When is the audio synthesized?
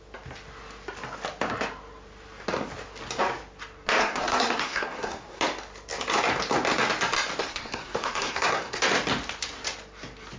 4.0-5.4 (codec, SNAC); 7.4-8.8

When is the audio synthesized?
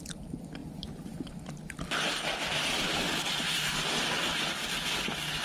none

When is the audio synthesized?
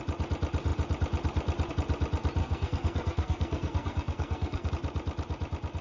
2.4-4.7 (codec, SNAC)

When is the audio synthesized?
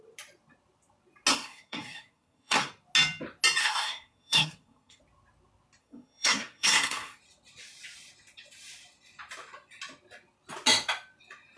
1.3-2.7 (codec, SNAC); 3.6-5.0; 5.8-7.2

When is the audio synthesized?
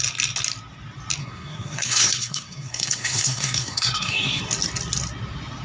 1.2-4.4 (codec, SNAC)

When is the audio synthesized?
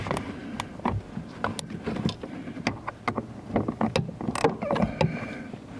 none